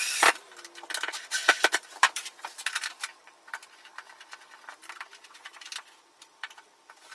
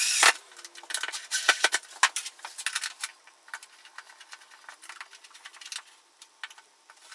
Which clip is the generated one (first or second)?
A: first